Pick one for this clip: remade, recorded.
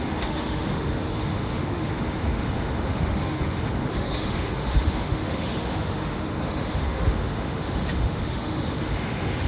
remade